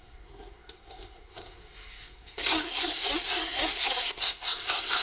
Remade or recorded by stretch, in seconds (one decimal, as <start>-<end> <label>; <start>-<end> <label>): 0.0-5.0 remade